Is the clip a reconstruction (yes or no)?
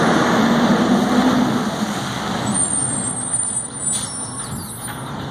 no